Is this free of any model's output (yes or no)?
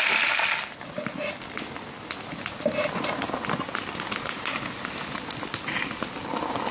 yes